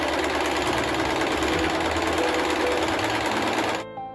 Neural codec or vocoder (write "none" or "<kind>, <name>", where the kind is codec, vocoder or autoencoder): none